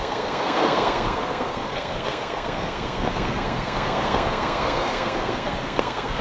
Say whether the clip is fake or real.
fake